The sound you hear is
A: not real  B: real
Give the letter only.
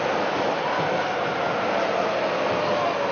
B